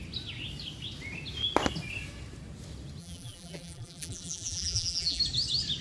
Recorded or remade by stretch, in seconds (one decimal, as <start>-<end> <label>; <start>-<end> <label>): 0.0-3.0 recorded; 3.0-5.2 remade; 5.2-5.8 recorded